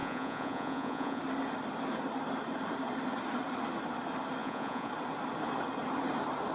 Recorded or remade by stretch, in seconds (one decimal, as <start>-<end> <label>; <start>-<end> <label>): 0.0-1.2 remade; 1.2-4.4 recorded; 4.4-4.9 remade; 4.9-6.5 recorded